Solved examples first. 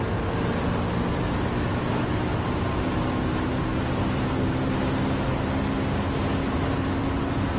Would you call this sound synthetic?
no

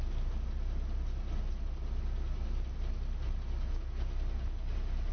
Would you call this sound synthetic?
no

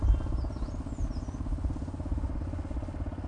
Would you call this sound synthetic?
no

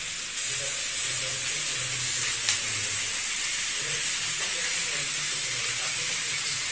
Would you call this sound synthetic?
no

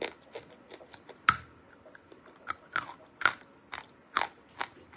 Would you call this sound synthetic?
no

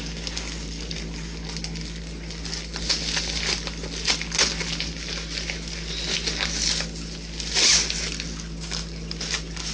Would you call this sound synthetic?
no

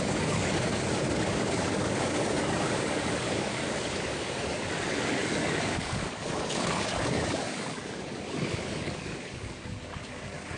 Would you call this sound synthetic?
yes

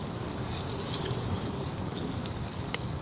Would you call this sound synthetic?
yes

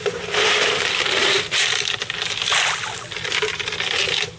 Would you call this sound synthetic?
no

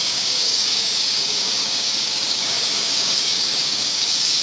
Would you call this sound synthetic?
yes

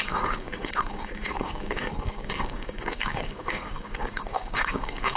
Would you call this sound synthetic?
yes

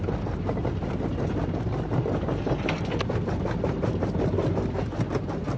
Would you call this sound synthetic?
no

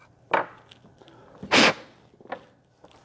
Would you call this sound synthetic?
no